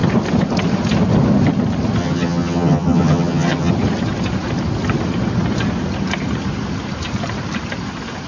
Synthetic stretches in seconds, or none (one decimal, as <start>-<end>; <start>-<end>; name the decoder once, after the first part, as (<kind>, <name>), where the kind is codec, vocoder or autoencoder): 2.0-3.7 (vocoder, HiFi-GAN)